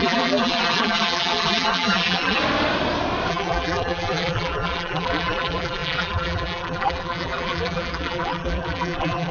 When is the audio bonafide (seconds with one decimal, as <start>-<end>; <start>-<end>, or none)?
2.4-3.3